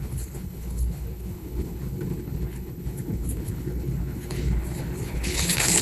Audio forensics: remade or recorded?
remade